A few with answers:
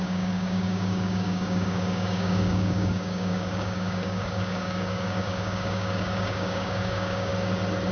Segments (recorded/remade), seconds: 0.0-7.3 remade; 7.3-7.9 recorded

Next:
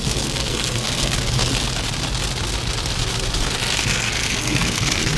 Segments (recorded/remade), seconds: 0.0-1.4 remade; 1.4-3.8 recorded; 3.8-5.2 remade

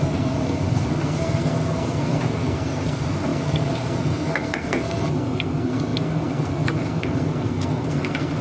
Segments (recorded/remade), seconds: 0.0-8.4 remade